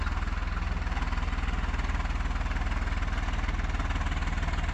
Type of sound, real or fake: real